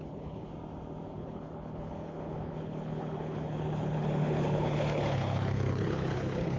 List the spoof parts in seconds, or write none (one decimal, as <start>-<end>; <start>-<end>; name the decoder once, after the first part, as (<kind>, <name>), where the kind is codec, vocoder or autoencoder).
0.0-0.5 (codec, HILCodec); 1.1-6.6